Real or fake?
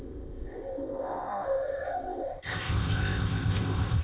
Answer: fake